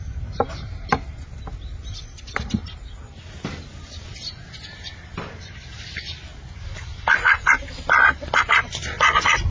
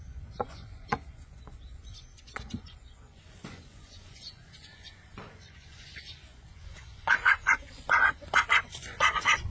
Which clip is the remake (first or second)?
second